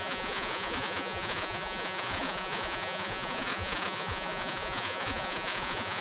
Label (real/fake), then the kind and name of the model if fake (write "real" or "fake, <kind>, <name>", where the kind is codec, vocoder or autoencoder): fake, vocoder, Vocos